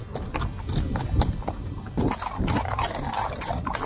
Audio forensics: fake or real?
real